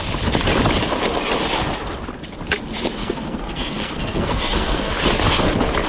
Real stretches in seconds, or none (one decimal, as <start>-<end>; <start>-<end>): 0.0-3.0; 4.9-5.9